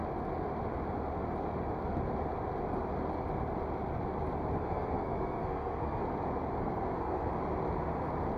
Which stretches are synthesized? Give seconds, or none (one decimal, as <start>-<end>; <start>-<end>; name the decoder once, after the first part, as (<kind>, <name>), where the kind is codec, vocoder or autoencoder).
4.6-6.0 (codec, SNAC); 6.6-7.3